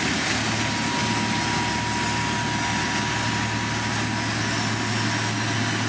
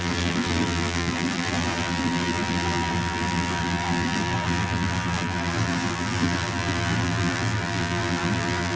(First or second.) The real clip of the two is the first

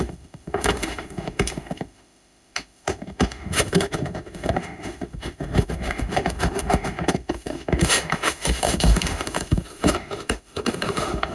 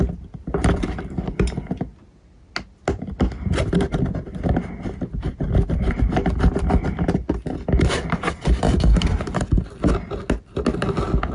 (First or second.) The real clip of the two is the second